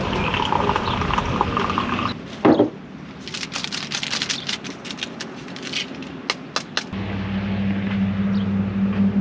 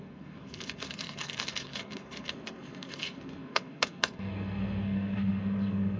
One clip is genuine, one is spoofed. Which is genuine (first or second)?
first